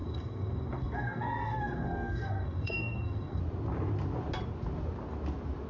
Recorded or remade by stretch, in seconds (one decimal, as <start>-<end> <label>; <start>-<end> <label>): 0.0-3.4 remade; 3.4-5.7 recorded